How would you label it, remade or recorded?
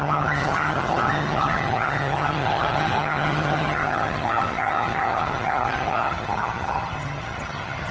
remade